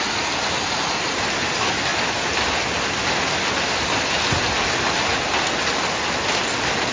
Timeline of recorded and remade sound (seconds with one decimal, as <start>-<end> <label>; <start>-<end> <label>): 0.0-6.9 recorded